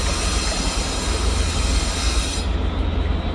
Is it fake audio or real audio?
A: real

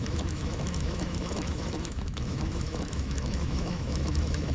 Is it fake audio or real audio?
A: fake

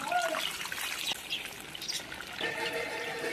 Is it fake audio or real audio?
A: real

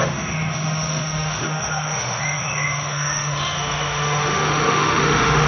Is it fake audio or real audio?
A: fake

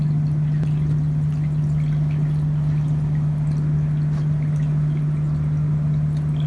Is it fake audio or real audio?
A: real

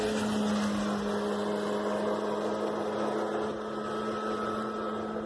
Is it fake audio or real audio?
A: real